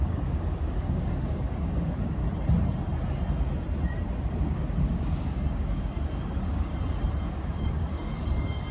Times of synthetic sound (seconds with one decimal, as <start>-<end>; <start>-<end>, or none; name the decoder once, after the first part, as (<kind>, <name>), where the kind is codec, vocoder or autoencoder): 0.0-2.2 (codec, DAC); 4.3-6.7; 7.3-8.7